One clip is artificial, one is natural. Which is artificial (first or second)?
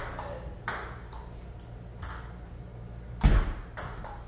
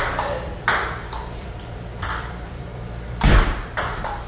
second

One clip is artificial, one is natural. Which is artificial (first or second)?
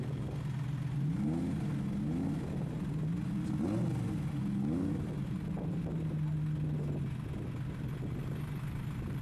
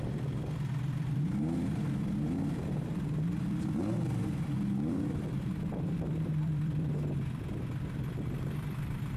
second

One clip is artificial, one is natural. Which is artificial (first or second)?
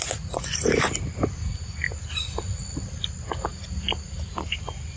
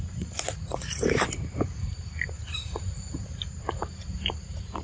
second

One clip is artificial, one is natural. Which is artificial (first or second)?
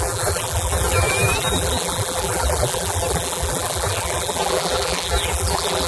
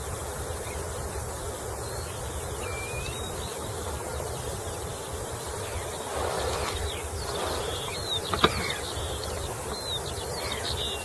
first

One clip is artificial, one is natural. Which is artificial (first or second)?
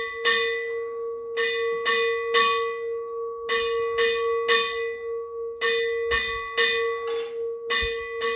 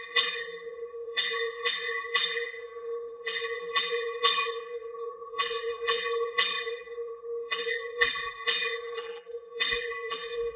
second